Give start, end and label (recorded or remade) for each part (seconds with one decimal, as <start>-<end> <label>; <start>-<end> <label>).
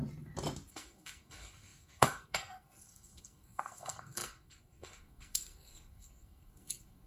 0.0-0.7 recorded; 0.7-7.1 remade